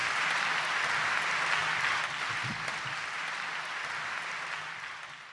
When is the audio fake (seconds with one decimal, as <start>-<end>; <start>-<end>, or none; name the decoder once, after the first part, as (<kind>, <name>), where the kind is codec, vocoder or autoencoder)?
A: none